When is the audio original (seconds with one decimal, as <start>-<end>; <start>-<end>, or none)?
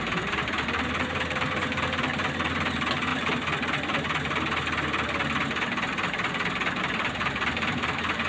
3.1-6.8